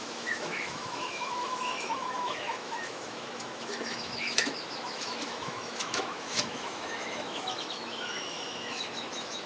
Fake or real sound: fake